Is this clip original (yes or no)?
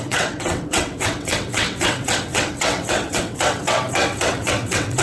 no